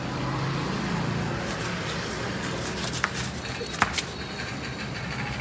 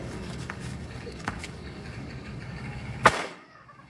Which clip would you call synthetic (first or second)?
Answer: second